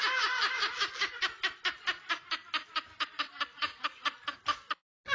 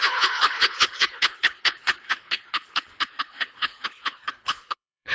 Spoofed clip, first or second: second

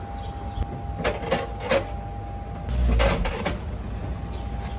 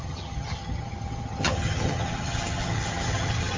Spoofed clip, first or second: second